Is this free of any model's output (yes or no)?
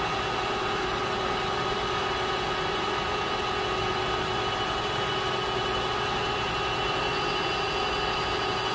yes